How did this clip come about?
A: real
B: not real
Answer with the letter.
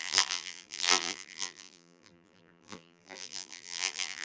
B